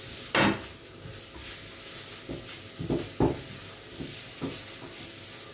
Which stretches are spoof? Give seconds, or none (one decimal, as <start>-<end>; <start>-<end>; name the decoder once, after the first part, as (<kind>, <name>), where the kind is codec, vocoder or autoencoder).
none